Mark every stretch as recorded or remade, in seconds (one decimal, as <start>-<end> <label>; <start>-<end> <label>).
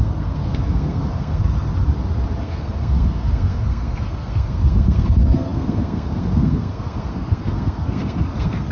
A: 0.0-1.7 remade; 1.7-2.4 recorded; 2.4-8.7 remade